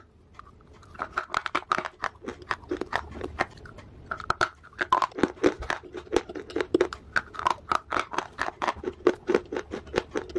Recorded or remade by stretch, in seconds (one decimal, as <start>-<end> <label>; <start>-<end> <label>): 0.0-10.4 recorded